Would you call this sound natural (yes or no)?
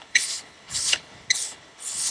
no